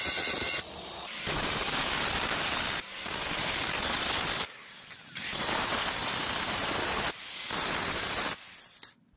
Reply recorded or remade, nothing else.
remade